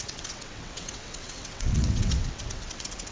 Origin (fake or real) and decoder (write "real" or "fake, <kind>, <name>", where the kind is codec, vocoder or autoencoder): fake, vocoder, WaveNeXt